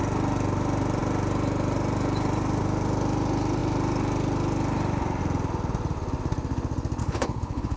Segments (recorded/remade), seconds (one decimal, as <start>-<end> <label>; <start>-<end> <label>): 0.0-7.0 recorded; 7.0-7.8 remade